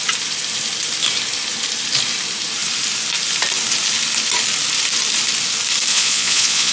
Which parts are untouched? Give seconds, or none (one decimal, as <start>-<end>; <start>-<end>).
0.0-5.9